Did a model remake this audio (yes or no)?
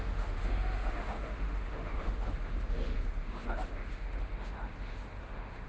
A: yes